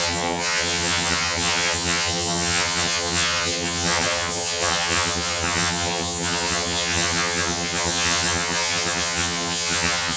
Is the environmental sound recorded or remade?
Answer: remade